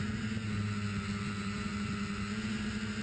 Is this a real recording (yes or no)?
yes